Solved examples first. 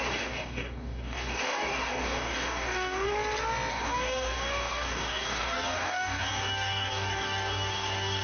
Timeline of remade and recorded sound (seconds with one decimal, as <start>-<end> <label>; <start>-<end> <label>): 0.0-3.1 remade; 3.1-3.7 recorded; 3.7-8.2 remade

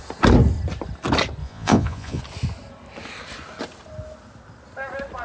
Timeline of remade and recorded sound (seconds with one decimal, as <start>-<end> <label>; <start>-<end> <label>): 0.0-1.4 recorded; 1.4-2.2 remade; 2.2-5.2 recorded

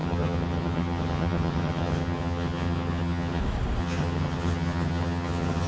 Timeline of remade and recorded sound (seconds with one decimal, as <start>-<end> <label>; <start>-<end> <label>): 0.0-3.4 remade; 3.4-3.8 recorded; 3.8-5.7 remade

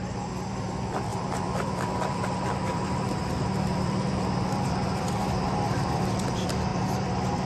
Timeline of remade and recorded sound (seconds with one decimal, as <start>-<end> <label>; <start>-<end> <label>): 0.0-7.4 remade

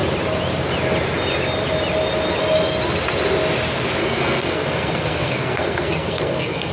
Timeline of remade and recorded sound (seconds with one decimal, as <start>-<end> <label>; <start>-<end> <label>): 0.0-4.0 recorded; 4.0-6.7 remade